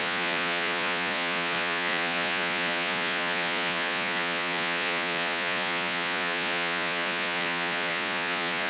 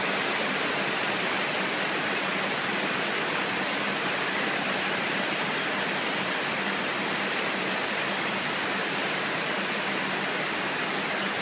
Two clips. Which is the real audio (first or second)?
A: second